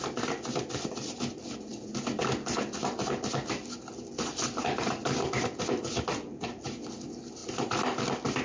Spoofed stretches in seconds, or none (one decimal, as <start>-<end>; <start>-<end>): 7.4-8.4